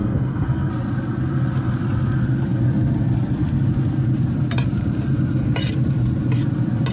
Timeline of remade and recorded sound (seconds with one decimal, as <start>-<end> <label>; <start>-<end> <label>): 0.0-0.7 remade; 0.7-6.9 recorded